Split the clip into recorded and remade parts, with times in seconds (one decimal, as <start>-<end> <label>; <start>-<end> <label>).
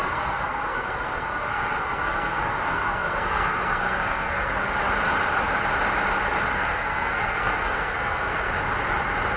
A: 0.0-4.5 remade; 4.5-6.5 recorded; 6.5-8.5 remade; 8.5-9.4 recorded